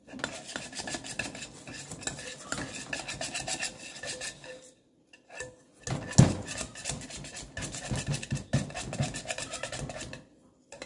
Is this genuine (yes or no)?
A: yes